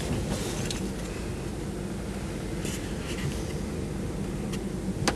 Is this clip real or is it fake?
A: real